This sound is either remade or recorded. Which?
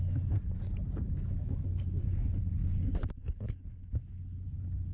recorded